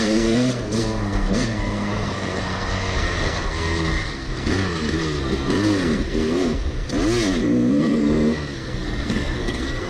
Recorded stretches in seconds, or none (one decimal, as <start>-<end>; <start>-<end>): 6.9-7.4